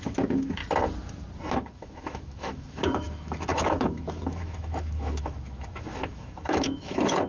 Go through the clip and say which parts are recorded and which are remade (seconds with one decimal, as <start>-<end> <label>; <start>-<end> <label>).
0.0-0.6 remade; 0.6-1.5 recorded; 1.5-7.3 remade